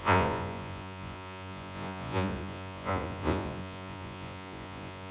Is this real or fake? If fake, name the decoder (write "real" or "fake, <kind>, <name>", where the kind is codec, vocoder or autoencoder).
fake, vocoder, Vocos